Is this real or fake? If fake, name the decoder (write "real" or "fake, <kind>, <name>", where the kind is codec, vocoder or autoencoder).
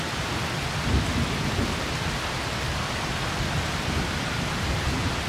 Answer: real